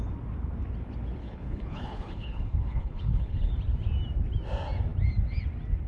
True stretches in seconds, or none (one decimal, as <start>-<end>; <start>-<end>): 0.0-1.2; 3.5-5.9

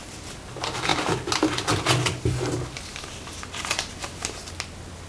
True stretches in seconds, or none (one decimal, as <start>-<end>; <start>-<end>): 0.0-5.1

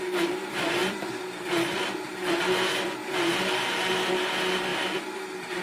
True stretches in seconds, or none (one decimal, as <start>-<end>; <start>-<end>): 0.0-0.8; 2.2-4.7

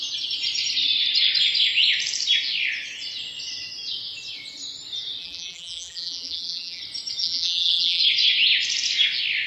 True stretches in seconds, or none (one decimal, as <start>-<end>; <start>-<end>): 0.0-5.2; 6.8-7.2; 8.0-9.5

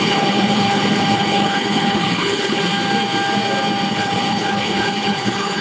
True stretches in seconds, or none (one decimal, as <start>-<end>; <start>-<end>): 2.6-3.9

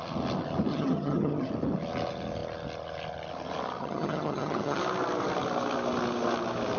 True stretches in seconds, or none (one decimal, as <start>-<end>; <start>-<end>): 0.0-0.7; 1.5-3.8; 4.8-6.8

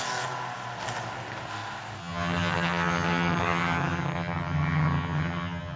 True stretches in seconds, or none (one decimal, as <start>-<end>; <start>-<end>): 0.0-2.0

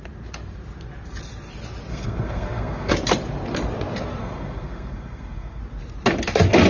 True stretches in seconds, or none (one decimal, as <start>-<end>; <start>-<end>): 0.0-1.9; 2.9-4.2; 5.6-6.7